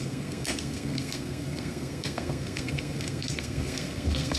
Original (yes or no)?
no